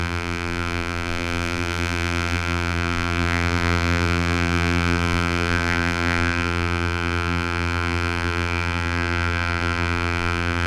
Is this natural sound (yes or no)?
no